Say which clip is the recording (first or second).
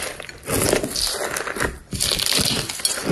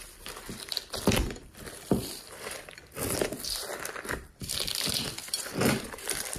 first